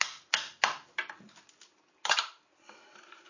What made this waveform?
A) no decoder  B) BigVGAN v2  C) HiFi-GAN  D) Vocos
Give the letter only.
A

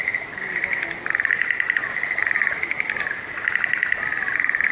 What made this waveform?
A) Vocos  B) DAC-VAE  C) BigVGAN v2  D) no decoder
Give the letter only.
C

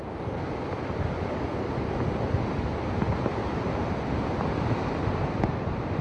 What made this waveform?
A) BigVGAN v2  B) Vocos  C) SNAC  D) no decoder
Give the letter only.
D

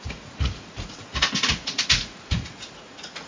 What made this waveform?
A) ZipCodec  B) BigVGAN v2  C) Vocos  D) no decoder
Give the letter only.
C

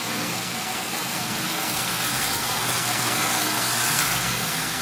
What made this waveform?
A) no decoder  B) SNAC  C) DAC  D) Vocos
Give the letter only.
B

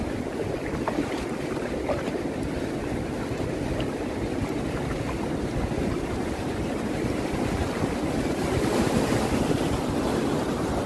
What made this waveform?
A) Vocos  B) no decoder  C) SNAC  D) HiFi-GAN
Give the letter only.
B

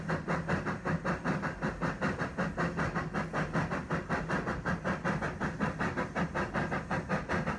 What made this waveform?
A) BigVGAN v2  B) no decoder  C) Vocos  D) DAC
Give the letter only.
B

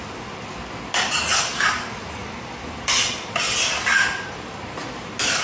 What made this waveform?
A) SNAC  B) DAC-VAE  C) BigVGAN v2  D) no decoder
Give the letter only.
D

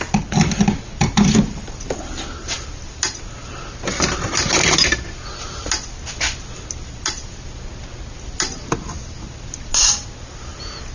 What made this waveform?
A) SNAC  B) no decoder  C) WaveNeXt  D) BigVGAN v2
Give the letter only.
B